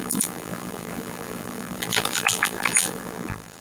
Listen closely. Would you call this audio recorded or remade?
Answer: remade